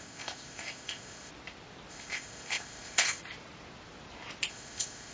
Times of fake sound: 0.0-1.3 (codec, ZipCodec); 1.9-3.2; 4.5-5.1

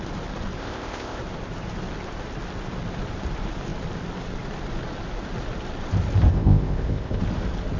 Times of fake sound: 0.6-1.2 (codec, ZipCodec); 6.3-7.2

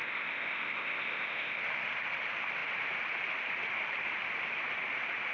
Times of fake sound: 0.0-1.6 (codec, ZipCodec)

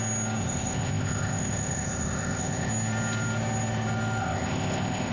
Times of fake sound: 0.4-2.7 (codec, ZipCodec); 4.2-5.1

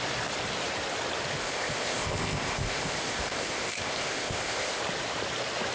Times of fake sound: 1.4-4.8 (codec, ZipCodec)